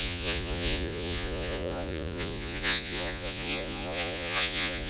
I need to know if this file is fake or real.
fake